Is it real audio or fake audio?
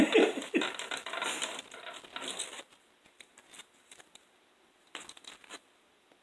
real